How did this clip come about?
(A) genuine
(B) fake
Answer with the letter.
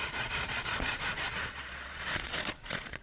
B